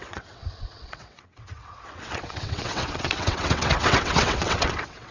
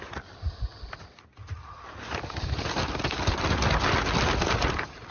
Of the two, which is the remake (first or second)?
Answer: first